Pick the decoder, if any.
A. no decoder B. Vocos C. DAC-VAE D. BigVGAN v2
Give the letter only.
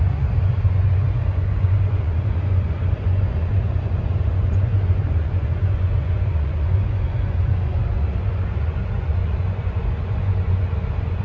B